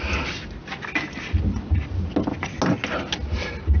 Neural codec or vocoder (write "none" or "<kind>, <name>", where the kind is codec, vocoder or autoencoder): none